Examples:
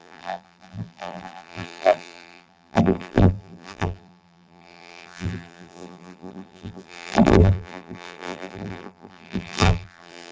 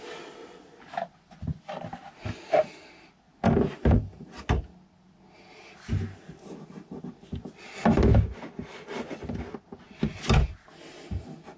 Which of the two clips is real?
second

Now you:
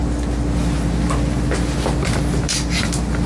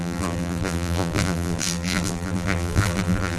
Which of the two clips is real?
first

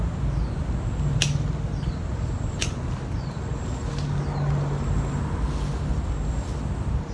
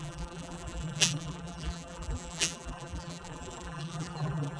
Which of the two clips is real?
first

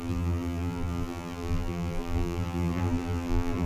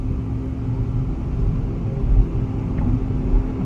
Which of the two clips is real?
second